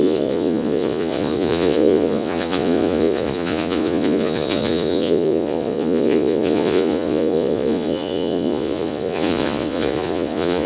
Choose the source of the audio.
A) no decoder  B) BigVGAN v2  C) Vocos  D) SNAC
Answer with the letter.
C